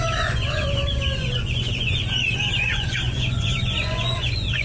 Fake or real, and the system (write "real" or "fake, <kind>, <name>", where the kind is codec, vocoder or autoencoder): fake, vocoder, Vocos